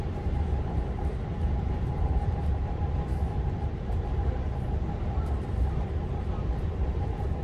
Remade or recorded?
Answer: remade